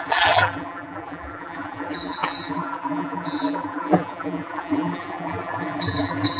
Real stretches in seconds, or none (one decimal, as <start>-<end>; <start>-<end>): none